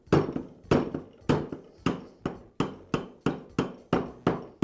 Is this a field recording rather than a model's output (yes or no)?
yes